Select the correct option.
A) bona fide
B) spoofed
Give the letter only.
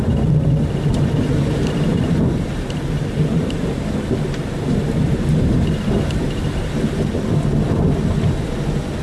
A